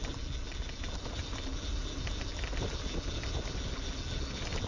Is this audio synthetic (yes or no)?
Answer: no